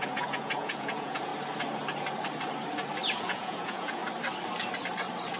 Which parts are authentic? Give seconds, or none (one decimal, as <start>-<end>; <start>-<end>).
1.3-3.2; 4.0-5.4